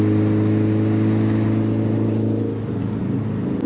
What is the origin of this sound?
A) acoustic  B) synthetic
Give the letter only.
A